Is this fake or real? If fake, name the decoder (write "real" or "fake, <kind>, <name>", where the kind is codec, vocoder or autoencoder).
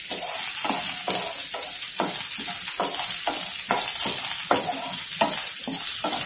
real